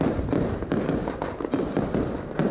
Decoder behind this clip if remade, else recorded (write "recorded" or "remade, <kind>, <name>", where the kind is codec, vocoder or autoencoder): recorded